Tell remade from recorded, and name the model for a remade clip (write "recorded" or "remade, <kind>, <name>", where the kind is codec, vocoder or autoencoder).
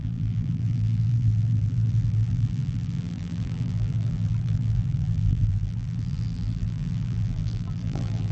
remade, vocoder, BigVGAN v2